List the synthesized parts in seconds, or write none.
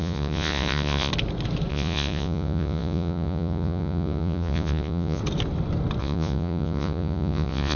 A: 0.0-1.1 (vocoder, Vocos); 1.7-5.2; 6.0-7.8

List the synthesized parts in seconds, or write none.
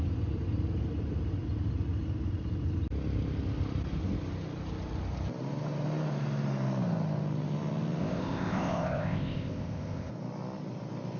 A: 8.0-10.1 (codec, ZipCodec)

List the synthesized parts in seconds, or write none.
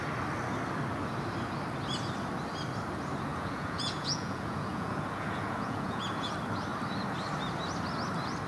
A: 3.3-6.3 (vocoder, Vocos)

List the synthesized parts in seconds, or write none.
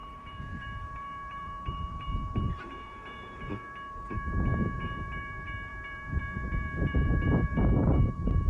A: 0.0-8.5 (vocoder, BigVGAN v2)